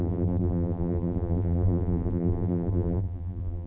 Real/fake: fake